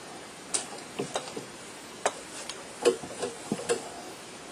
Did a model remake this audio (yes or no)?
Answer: yes